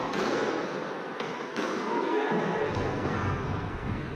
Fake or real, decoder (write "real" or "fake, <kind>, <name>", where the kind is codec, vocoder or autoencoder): fake, codec, SNAC